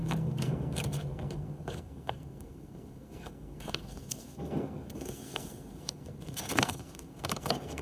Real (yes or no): no